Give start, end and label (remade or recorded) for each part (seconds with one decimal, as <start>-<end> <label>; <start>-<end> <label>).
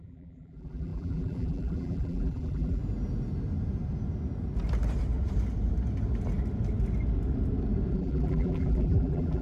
0.0-2.8 remade; 2.8-7.9 recorded; 7.9-9.4 remade